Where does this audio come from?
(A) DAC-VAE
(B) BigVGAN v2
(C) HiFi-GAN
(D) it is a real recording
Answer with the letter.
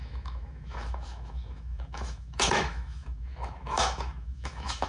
A